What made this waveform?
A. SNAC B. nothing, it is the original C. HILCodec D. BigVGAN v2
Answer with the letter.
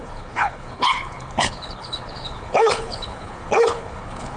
C